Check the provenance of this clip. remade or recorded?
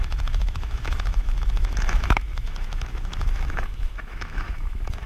remade